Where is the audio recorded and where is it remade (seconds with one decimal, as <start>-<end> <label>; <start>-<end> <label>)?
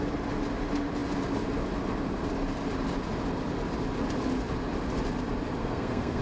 0.0-5.6 recorded; 5.6-6.2 remade